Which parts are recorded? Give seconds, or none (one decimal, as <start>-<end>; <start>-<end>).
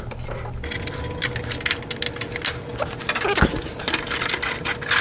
0.0-5.0